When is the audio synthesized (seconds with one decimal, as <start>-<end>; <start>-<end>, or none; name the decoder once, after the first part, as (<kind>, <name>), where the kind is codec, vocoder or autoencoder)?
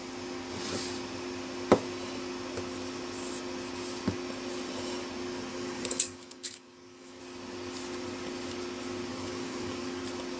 5.5-7.2 (codec, DAC); 9.1-10.0